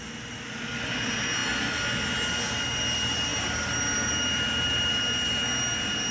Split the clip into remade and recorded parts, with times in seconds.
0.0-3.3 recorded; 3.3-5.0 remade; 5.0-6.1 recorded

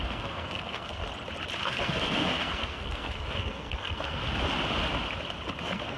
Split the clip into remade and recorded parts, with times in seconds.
0.0-1.0 remade; 1.0-1.6 recorded; 1.6-4.2 remade; 4.2-5.6 recorded; 5.6-6.0 remade